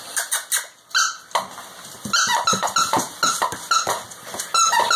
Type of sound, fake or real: real